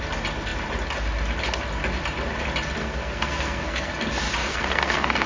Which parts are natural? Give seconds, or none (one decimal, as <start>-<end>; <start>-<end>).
0.0-2.8; 3.9-4.4